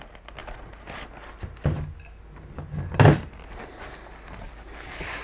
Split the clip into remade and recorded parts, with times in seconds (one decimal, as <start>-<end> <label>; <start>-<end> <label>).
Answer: 0.0-5.2 recorded

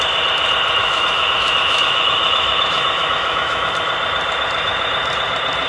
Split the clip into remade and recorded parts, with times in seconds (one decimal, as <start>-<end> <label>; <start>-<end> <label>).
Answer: 0.0-0.8 recorded; 0.8-3.7 remade; 3.7-5.7 recorded